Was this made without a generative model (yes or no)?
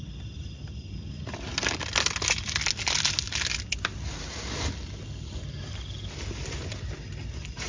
yes